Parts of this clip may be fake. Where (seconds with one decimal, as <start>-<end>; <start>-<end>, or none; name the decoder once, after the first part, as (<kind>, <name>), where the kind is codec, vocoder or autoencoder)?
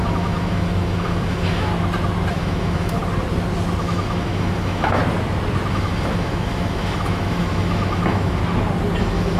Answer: 0.0-1.7 (autoencoder, DAC-VAE); 2.3-3.0; 3.8-5.0; 5.7-8.4; 9.0-9.4